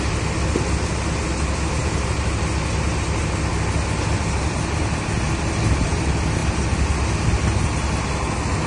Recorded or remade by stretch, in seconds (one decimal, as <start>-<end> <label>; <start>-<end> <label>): 0.0-8.7 recorded